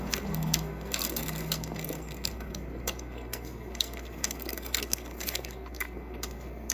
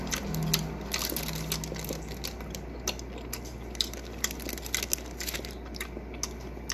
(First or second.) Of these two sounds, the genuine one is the second